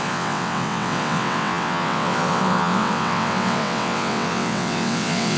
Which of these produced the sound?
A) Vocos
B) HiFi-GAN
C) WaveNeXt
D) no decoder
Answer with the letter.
C